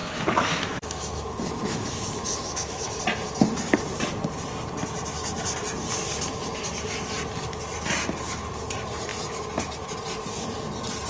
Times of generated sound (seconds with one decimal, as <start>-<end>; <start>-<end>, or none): 0.0-3.0